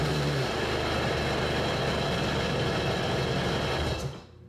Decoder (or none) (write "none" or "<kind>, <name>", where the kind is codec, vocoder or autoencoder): none